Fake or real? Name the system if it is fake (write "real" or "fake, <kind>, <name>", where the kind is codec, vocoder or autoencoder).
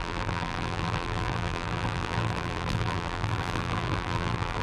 fake, vocoder, BigVGAN v2